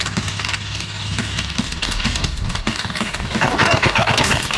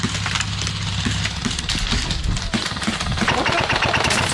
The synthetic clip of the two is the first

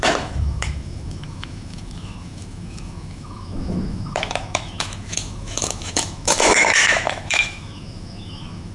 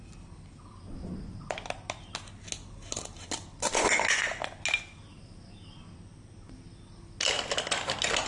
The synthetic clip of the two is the first